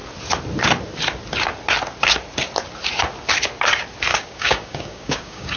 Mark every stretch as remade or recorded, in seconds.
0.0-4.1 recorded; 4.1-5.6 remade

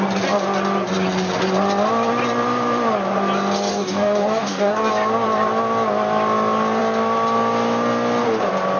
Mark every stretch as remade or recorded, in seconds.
0.0-3.7 recorded; 3.7-4.9 remade; 4.9-8.8 recorded

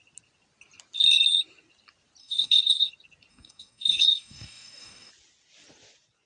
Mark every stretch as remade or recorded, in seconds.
0.0-2.2 recorded; 2.2-2.9 remade; 2.9-3.3 recorded; 3.3-5.1 remade; 5.1-6.3 recorded

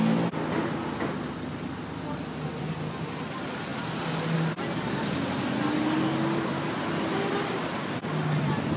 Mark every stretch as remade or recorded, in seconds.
0.0-8.8 recorded

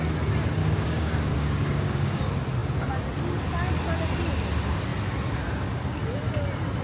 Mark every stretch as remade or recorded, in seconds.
0.0-0.6 recorded; 0.6-2.2 remade; 2.2-6.8 recorded

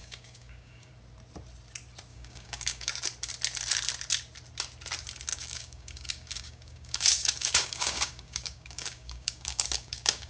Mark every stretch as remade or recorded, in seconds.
0.0-0.9 remade; 0.9-2.1 recorded; 2.1-2.9 remade; 2.9-5.3 recorded; 5.3-10.3 remade